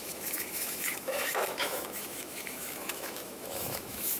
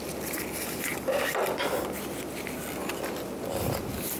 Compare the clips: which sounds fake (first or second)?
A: first